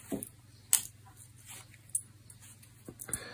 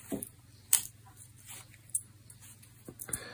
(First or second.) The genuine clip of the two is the first